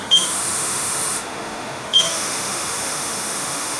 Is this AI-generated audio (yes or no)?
yes